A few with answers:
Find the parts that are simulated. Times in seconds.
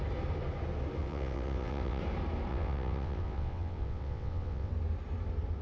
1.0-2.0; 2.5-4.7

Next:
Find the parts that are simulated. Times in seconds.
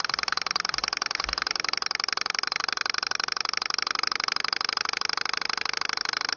none